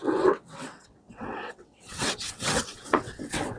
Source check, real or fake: fake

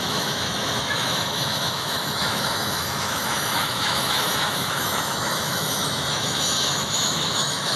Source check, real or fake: fake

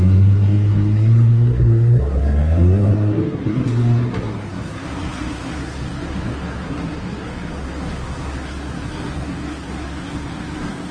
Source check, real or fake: fake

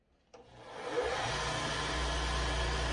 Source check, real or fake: real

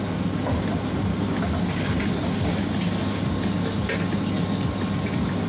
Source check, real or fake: real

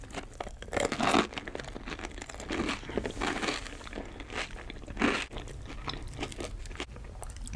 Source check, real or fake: real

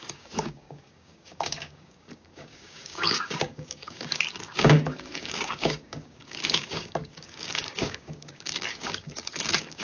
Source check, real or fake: fake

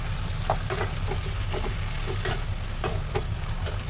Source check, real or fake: real